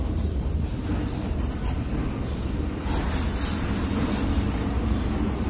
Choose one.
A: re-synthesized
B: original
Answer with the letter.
B